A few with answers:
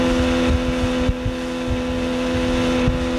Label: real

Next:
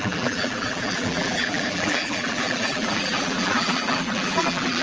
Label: fake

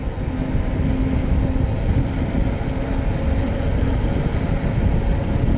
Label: real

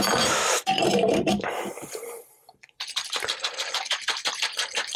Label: fake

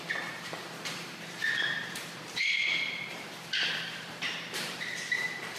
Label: fake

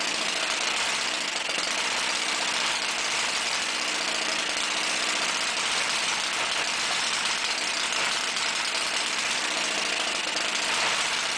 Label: fake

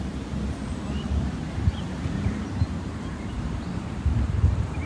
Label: fake